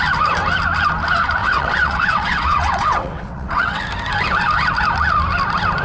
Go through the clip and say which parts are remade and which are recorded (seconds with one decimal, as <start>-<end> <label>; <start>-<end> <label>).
0.0-1.4 recorded; 1.4-3.8 remade; 3.8-5.8 recorded